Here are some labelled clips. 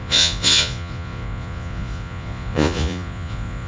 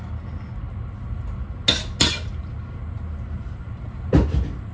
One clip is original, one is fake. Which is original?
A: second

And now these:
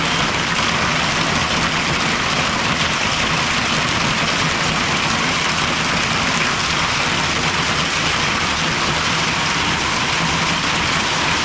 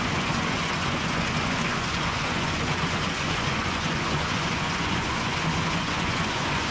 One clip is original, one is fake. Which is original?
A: first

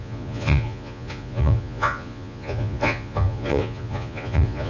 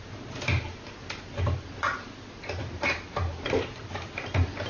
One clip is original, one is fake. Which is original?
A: second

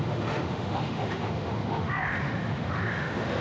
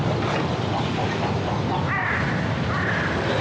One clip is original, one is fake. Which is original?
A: second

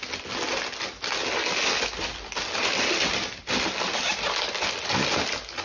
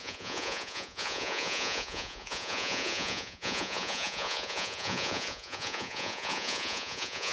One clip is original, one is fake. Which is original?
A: first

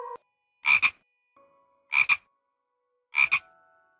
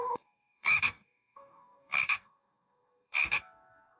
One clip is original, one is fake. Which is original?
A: first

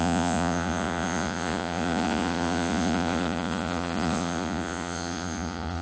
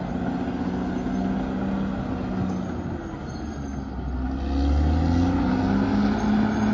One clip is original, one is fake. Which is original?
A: second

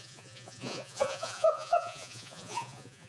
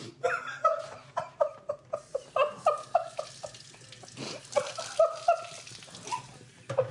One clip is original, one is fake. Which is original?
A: second